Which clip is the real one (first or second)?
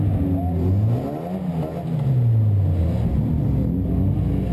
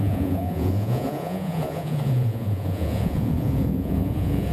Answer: first